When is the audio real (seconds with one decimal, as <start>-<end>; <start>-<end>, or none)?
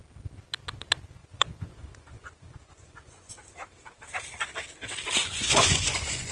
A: 0.0-1.2; 3.3-5.2